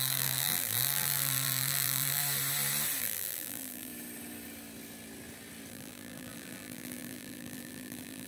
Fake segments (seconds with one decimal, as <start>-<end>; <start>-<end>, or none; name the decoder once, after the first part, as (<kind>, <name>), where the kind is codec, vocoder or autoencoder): 0.0-2.2 (vocoder, BigVGAN v2); 3.0-3.9; 5.7-8.3